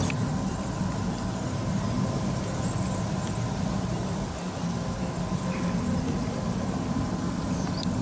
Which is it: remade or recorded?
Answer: recorded